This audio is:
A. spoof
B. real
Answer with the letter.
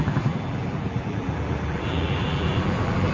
A